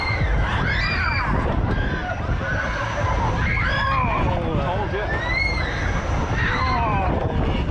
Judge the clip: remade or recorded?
recorded